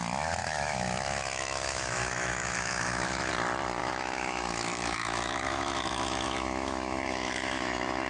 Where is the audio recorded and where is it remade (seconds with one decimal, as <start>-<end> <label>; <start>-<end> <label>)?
0.0-0.4 recorded; 0.4-3.3 remade; 3.3-3.8 recorded; 3.8-8.1 remade